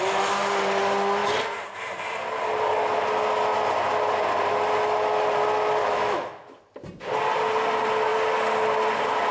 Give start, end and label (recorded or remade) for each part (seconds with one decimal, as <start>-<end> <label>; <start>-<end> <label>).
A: 0.0-5.8 recorded; 5.8-6.6 remade; 6.6-9.3 recorded